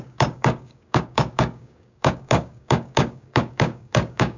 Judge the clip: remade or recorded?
remade